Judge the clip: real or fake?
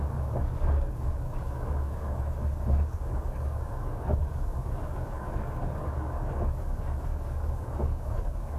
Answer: fake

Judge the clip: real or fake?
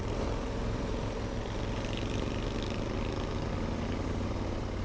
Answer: fake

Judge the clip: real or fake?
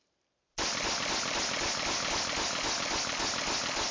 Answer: real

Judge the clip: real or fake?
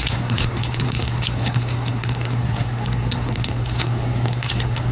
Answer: fake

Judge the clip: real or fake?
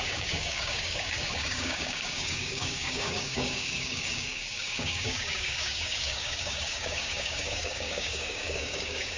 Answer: fake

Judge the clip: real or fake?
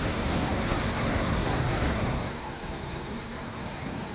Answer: fake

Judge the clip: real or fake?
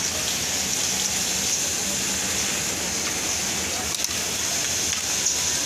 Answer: real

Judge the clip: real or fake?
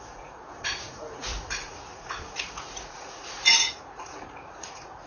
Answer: fake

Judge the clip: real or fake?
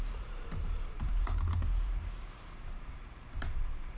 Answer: fake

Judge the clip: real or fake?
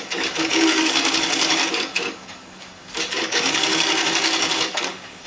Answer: fake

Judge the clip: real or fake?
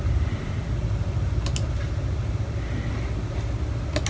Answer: real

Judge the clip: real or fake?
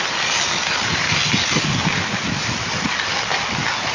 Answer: real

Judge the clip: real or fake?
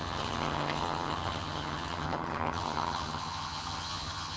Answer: fake